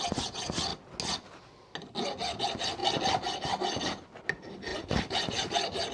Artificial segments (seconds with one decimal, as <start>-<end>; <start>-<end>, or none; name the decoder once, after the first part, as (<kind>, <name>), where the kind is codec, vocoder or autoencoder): 0.0-0.7 (vocoder, BigVGAN v2); 2.4-2.8; 3.8-5.9

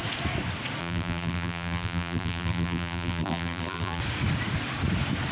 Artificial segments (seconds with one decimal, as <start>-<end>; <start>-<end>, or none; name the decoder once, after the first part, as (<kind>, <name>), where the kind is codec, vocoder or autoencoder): 0.8-4.0 (vocoder, BigVGAN v2)

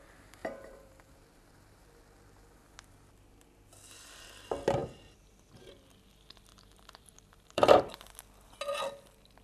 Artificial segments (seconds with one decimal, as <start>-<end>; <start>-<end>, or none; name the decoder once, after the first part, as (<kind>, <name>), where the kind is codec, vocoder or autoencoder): 0.4-1.8 (vocoder, BigVGAN v2); 6.5-7.8

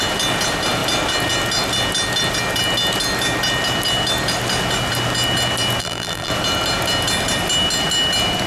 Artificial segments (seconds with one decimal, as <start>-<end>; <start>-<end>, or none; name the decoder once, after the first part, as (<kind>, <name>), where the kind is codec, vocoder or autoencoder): 5.8-6.3 (vocoder, BigVGAN v2)

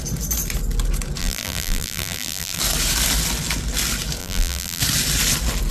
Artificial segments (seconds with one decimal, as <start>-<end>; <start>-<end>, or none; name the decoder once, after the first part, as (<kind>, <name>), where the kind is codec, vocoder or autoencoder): 1.2-2.6 (vocoder, BigVGAN v2); 4.2-4.8

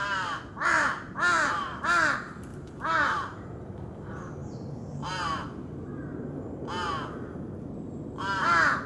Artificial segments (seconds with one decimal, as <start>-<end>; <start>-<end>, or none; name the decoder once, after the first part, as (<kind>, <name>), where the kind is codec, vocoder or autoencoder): 0.5-6.0 (vocoder, BigVGAN v2)

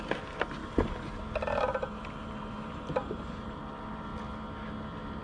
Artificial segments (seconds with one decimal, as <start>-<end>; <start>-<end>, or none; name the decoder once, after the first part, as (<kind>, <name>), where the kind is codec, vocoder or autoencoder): 0.6-1.2 (vocoder, BigVGAN v2); 1.7-3.6

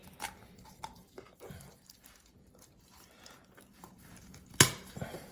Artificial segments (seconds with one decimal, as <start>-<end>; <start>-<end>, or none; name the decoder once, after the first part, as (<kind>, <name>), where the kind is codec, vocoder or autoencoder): 0.0-5.3 (vocoder, BigVGAN v2)